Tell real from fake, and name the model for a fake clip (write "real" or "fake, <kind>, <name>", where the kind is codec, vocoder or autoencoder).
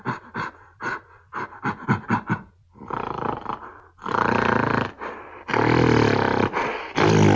real